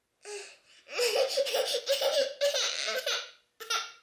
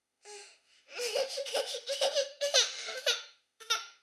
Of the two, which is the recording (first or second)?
first